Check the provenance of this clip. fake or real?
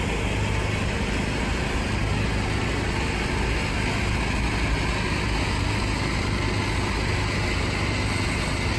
real